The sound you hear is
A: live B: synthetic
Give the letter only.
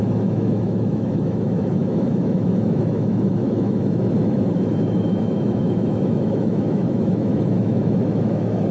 B